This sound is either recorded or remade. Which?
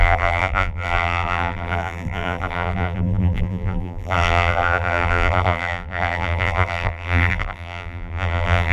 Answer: remade